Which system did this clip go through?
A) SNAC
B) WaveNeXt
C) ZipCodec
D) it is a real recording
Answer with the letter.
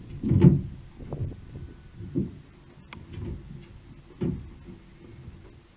D